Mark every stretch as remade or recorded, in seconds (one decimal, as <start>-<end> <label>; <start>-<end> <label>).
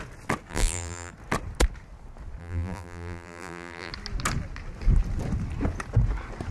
0.0-0.5 recorded; 0.5-1.1 remade; 1.1-2.4 recorded; 2.4-3.9 remade; 3.9-6.5 recorded